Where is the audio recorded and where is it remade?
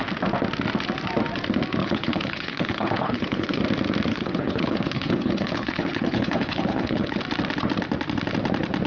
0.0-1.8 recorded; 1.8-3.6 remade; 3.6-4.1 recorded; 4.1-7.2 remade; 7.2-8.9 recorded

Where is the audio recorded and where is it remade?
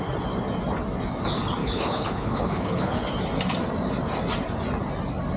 0.0-1.6 recorded; 1.6-3.0 remade; 3.0-5.4 recorded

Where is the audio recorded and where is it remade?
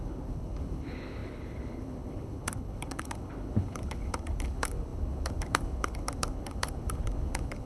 0.0-7.7 remade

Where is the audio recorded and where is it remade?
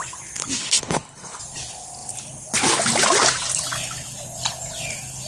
0.0-0.6 recorded; 0.6-1.4 remade; 1.4-5.3 recorded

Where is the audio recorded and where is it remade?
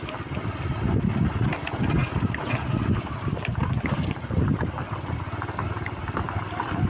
0.0-6.9 recorded